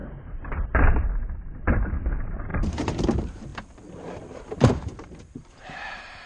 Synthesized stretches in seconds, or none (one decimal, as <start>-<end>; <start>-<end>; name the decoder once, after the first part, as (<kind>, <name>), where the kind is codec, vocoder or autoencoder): 0.0-3.5 (vocoder, BigVGAN v2); 4.2-6.3

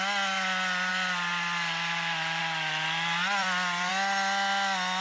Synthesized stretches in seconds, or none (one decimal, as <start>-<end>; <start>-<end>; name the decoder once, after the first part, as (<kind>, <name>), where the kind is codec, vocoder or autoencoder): 0.9-2.4 (vocoder, BigVGAN v2); 3.4-3.9

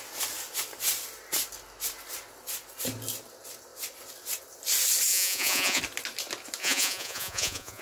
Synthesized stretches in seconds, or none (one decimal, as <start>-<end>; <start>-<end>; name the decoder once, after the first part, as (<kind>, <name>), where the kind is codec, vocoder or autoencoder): 5.1-5.8 (vocoder, Vocos); 6.6-7.8

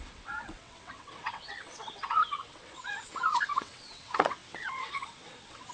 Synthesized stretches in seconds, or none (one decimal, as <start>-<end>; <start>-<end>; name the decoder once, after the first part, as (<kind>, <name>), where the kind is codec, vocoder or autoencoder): 0.0-5.7 (vocoder, WaveNeXt)

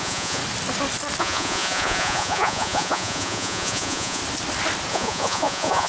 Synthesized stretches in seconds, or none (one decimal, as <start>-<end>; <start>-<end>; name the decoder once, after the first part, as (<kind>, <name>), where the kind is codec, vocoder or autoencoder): 0.0-0.4 (vocoder, Vocos); 1.2-4.2; 4.9-5.9